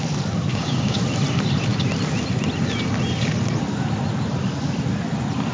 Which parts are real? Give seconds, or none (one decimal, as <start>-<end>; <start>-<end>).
0.0-0.5; 1.0-5.5